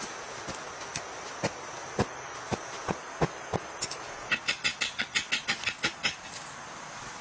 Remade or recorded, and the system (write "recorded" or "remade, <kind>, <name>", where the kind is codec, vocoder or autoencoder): recorded